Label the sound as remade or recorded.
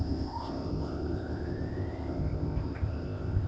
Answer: remade